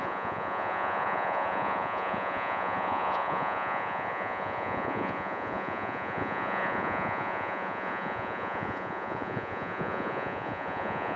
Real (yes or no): no